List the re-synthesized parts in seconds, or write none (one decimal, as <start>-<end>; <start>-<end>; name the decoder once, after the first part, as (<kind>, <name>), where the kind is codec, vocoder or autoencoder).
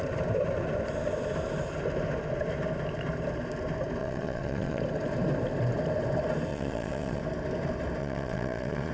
4.0-4.8 (vocoder, Vocos); 6.5-7.2; 8.0-8.9